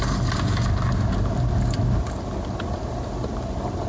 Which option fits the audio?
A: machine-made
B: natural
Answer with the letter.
B